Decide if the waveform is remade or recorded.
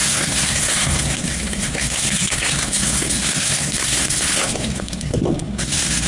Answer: remade